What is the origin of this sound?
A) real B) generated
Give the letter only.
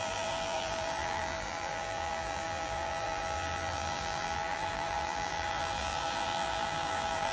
B